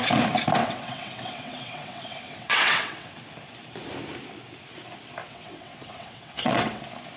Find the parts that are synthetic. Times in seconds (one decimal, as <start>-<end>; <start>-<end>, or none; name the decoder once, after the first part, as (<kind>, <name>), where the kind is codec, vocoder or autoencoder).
0.6-3.1 (vocoder, WaveNeXt); 5.2-6.8